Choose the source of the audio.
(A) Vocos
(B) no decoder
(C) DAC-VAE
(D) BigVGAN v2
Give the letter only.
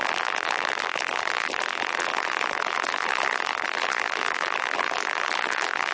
D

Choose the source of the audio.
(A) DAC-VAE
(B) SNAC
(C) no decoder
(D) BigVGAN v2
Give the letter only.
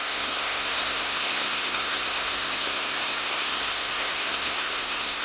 B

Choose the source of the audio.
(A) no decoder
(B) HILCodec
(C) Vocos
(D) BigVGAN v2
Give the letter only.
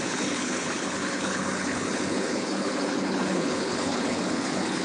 B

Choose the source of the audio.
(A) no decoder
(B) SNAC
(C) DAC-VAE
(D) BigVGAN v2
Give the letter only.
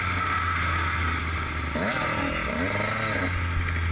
A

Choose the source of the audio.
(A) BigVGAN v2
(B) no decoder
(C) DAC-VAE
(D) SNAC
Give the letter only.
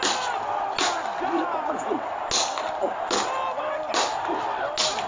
B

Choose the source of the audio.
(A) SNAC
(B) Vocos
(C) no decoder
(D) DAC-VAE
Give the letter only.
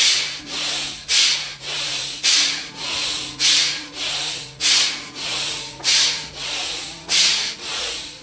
B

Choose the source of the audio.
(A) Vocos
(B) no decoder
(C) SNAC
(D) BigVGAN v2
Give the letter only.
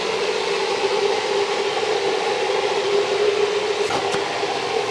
B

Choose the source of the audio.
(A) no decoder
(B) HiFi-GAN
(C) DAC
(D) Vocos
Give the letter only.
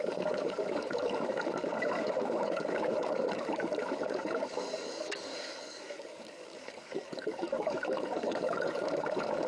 C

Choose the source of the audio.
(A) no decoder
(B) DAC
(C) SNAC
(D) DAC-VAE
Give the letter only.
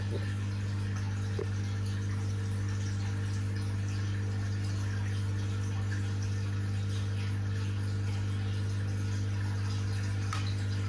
A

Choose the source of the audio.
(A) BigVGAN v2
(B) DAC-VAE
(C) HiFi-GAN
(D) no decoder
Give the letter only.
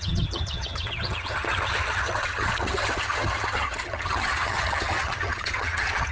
C